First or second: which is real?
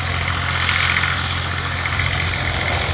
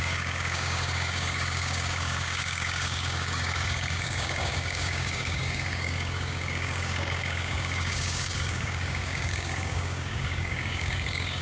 first